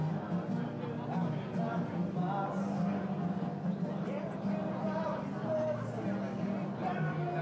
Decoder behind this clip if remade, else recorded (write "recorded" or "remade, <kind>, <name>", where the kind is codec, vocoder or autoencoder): recorded